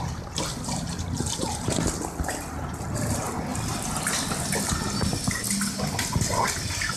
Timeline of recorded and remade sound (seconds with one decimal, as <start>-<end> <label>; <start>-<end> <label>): 0.0-7.0 recorded